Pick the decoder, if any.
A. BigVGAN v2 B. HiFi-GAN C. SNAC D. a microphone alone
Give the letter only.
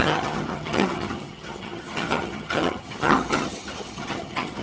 B